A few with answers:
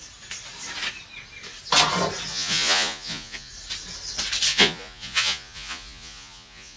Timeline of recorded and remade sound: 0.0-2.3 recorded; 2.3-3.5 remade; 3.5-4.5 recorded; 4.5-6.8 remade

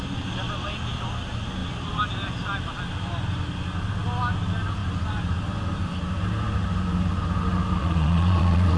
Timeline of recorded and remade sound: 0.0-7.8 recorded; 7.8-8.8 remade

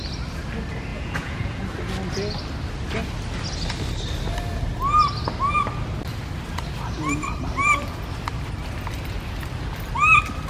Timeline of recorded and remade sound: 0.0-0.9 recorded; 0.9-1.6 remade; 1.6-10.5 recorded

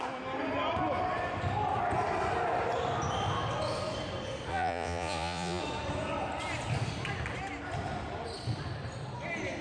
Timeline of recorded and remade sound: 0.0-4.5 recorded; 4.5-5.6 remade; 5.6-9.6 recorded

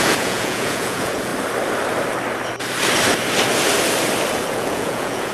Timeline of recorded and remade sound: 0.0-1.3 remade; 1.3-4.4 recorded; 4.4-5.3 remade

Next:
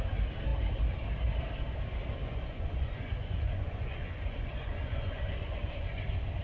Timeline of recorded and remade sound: 0.0-2.2 recorded; 2.2-6.0 remade; 6.0-6.4 recorded